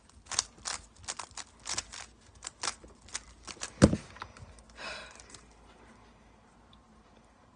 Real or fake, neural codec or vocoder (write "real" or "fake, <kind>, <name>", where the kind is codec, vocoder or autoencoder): real